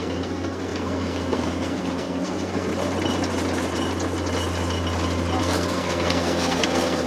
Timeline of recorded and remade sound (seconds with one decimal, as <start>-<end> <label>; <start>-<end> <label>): 0.0-2.7 remade; 2.7-5.4 recorded; 5.4-7.1 remade